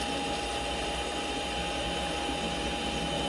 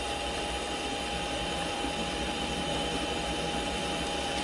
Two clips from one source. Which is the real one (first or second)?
first